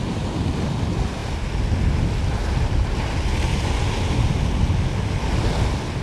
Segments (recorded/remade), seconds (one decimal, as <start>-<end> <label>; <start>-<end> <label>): 0.0-6.0 recorded